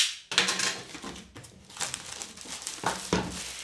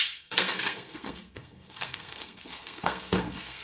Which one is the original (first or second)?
first